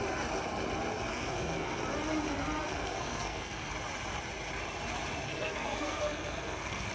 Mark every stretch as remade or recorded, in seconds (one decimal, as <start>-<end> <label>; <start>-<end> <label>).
0.0-1.1 recorded; 1.1-1.8 remade; 1.8-2.7 recorded; 2.7-3.7 remade; 3.7-5.3 recorded; 5.3-6.9 remade